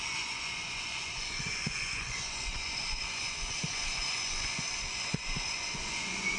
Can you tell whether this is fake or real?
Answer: fake